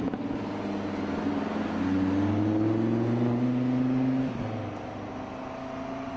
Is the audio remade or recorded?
recorded